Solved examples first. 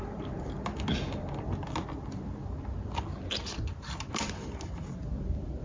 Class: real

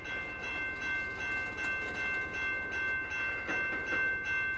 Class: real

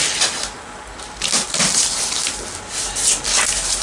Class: real